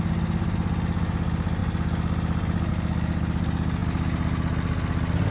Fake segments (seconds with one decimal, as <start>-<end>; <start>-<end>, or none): none